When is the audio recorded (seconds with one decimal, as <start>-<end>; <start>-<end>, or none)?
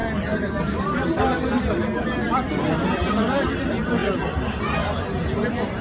0.0-3.5; 4.0-4.5